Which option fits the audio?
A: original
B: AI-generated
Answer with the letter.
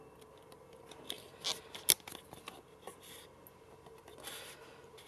A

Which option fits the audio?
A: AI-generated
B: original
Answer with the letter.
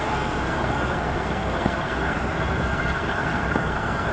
A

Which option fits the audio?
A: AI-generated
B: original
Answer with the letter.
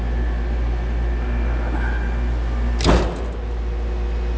B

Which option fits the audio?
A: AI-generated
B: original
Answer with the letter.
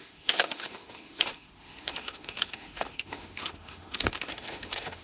A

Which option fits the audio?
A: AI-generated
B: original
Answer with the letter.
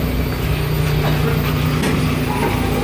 B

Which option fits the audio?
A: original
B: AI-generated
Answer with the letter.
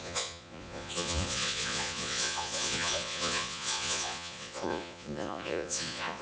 B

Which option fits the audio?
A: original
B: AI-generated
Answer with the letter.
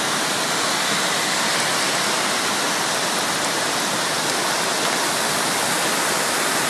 A